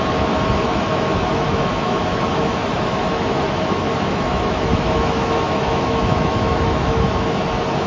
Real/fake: fake